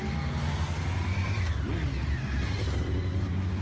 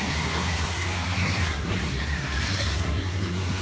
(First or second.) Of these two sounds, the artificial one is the second